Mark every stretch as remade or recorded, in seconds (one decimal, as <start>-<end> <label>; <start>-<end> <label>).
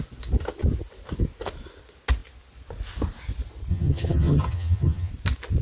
0.0-3.7 recorded; 3.7-5.1 remade; 5.1-5.6 recorded